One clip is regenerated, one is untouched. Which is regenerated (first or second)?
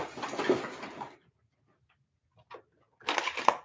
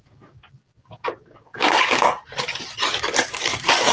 second